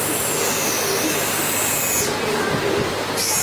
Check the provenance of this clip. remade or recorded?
recorded